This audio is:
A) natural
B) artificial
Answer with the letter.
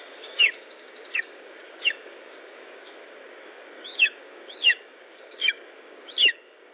B